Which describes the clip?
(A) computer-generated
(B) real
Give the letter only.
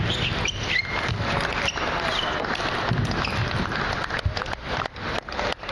B